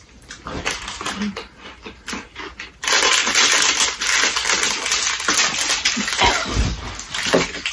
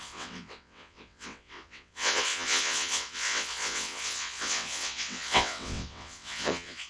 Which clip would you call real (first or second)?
first